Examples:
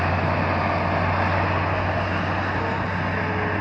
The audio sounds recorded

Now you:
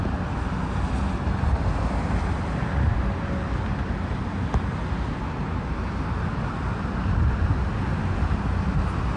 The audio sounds recorded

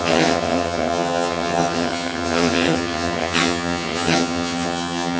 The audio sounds remade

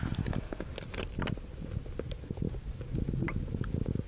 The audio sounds recorded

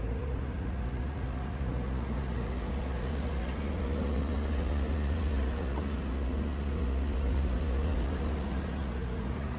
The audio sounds remade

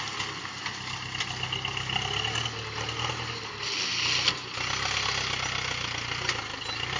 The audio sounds recorded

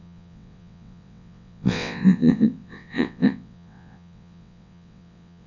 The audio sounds remade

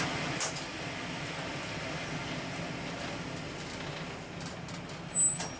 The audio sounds recorded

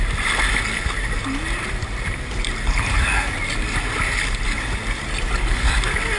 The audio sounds recorded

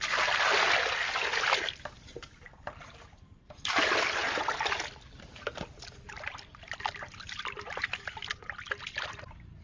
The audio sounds recorded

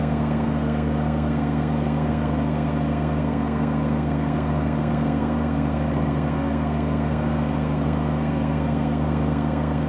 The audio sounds remade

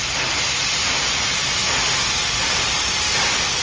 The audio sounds recorded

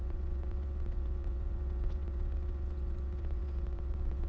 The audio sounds remade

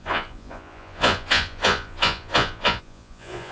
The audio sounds remade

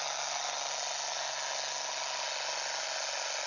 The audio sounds recorded